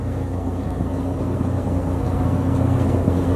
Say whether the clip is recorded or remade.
remade